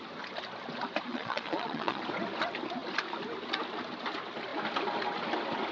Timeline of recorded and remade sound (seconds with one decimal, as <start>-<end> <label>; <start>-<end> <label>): 0.0-1.1 recorded; 1.1-2.0 remade; 2.0-5.7 recorded